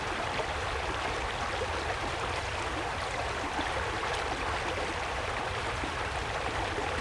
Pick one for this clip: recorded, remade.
remade